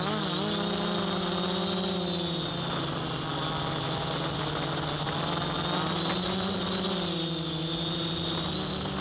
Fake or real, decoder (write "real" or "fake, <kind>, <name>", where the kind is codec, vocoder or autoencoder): real